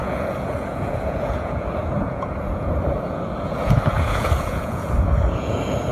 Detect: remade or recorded remade